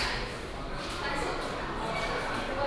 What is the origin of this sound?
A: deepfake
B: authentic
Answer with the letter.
A